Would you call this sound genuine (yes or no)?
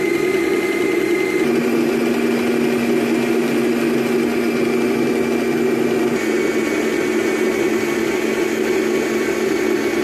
yes